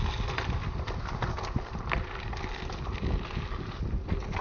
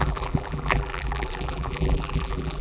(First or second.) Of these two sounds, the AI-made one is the second